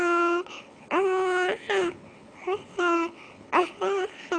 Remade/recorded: remade